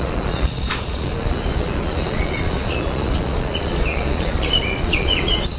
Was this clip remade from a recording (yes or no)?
yes